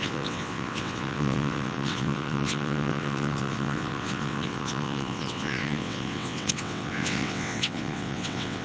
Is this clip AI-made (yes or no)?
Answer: yes